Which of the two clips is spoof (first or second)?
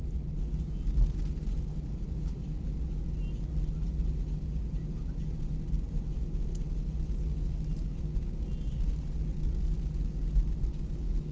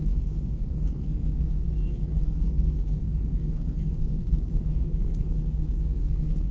second